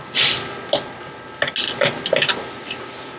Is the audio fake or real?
real